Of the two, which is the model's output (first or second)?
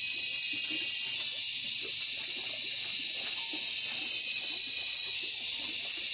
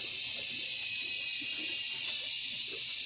second